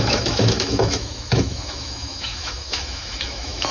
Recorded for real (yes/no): no